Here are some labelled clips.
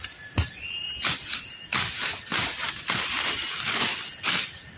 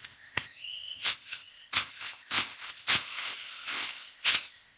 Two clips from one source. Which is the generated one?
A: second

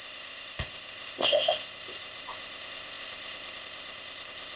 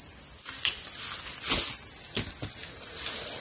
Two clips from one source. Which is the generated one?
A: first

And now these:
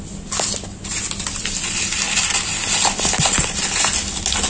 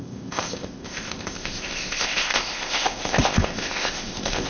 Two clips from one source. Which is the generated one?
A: second